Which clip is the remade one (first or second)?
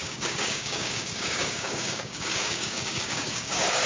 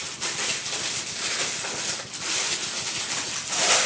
first